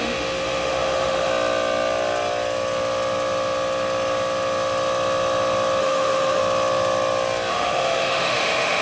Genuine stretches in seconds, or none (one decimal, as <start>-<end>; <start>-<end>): 1.3-5.8; 6.4-7.5